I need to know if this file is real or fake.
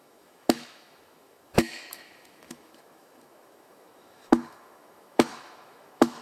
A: fake